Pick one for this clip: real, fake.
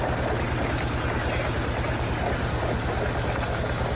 real